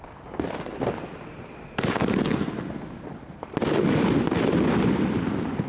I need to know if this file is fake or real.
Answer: real